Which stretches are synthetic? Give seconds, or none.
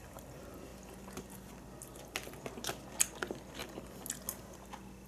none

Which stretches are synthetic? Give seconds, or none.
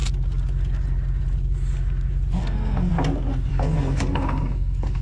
2.4-2.9 (codec, SNAC); 3.5-5.0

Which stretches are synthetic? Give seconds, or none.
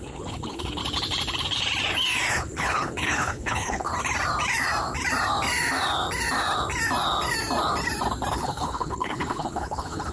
0.0-0.8 (codec, HILCodec); 2.3-3.9; 8.3-10.1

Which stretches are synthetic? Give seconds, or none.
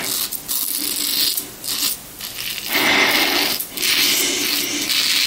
none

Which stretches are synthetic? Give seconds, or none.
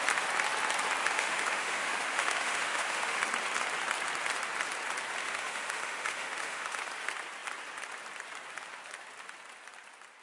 1.0-3.2 (autoencoder, DAC-VAE); 5.2-6.8